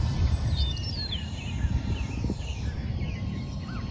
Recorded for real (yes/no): no